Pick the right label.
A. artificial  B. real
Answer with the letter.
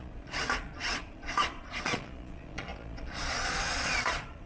A